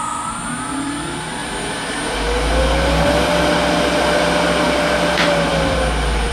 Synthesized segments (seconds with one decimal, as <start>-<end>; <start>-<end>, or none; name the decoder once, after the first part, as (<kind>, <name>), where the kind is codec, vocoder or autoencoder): none